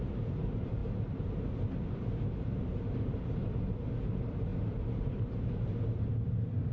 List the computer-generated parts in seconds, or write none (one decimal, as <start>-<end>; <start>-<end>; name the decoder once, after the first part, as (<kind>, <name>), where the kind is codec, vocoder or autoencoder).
0.0-0.8 (vocoder, BigVGAN v2); 1.9-6.7